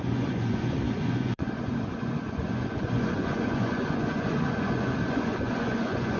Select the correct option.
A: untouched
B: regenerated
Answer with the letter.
B